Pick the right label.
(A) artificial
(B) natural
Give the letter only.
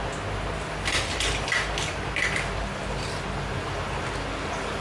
B